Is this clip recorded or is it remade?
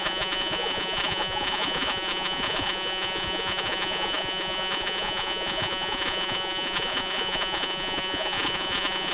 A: remade